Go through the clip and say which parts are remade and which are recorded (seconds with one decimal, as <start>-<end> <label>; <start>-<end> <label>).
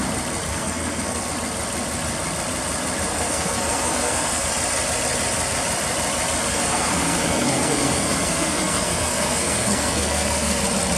0.0-0.5 recorded; 0.5-1.3 remade; 1.3-3.1 recorded; 3.1-4.5 remade; 4.5-6.5 recorded; 6.5-10.6 remade; 10.6-11.0 recorded